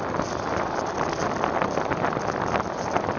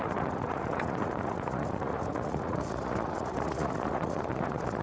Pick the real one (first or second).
first